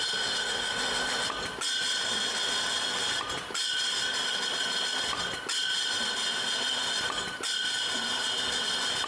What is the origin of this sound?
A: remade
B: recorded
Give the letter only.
B